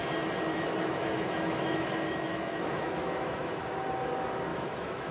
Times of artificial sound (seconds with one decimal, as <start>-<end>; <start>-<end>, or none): 0.5-3.6; 4.5-5.1